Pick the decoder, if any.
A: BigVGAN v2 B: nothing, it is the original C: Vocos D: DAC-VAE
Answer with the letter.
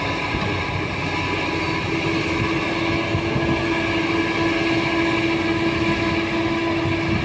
B